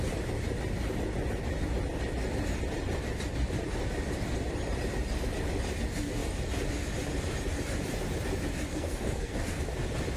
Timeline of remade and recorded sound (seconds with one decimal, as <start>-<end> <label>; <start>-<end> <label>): 0.0-8.7 recorded; 8.7-9.6 remade; 9.6-10.2 recorded